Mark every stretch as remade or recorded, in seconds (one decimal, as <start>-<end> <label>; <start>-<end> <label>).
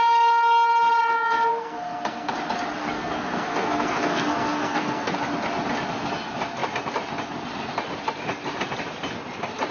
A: 0.0-1.5 recorded; 1.5-2.3 remade; 2.3-2.8 recorded; 2.8-5.2 remade; 5.2-9.7 recorded